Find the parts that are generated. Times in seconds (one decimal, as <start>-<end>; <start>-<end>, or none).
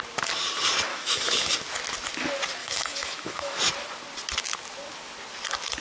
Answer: 0.9-1.5; 2.6-3.6